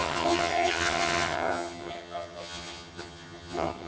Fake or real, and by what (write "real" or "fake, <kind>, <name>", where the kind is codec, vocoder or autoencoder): fake, vocoder, HiFi-GAN